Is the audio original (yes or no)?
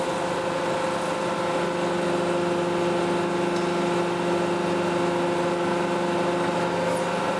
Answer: yes